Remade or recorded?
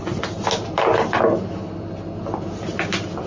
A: recorded